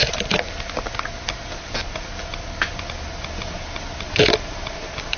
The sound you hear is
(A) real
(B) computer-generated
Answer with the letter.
A